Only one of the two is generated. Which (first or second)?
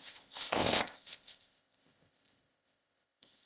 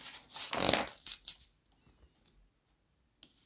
first